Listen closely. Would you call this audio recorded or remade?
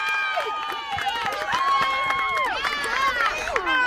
recorded